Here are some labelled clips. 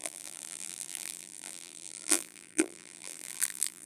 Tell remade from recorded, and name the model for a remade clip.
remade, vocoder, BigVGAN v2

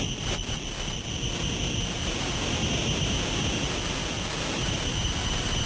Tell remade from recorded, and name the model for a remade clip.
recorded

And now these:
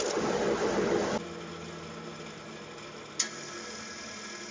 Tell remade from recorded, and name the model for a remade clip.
recorded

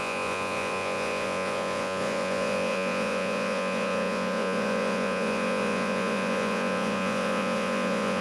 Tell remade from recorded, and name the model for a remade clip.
remade, vocoder, Vocos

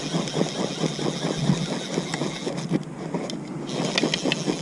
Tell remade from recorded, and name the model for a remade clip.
recorded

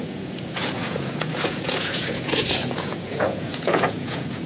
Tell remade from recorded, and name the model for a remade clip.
remade, vocoder, Vocos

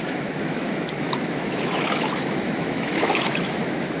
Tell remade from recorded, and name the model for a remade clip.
remade, autoencoder, DAC-VAE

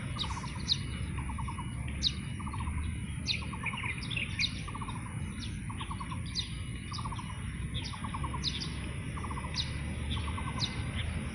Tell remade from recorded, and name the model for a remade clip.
recorded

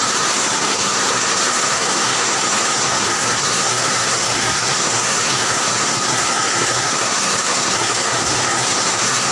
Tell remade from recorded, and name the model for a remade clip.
remade, codec, SNAC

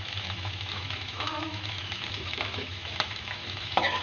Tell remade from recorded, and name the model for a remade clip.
remade, autoencoder, DAC-VAE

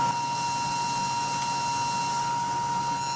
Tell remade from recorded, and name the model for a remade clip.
recorded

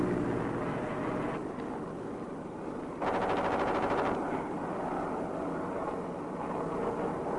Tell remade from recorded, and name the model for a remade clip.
recorded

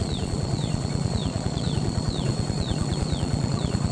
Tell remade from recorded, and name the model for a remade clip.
remade, vocoder, Vocos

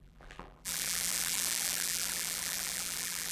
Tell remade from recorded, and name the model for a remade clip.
remade, vocoder, BigVGAN v2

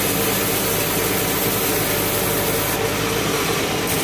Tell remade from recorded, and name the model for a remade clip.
recorded